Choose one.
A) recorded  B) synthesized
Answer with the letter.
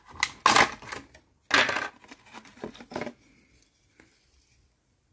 A